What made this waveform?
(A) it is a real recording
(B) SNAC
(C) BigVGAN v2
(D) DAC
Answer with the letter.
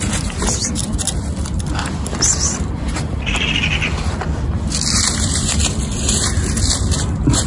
C